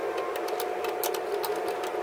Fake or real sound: real